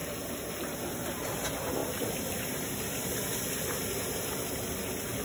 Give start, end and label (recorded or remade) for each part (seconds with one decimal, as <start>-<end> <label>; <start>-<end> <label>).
0.0-5.2 recorded